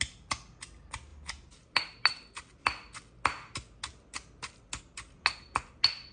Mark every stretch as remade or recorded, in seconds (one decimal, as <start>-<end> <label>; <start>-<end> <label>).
0.0-6.1 recorded